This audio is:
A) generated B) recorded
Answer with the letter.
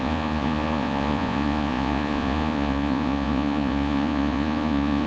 A